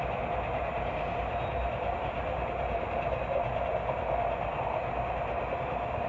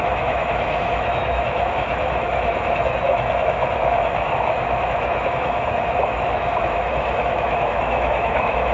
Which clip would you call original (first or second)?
first